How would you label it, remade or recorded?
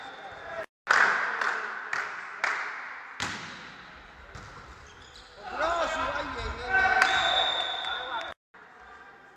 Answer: recorded